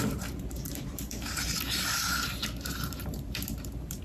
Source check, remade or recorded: remade